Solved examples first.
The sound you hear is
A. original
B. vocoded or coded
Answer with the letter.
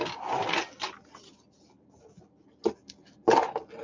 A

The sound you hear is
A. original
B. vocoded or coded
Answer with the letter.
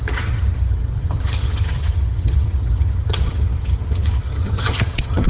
B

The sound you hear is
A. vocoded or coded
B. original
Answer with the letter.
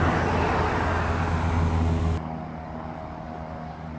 B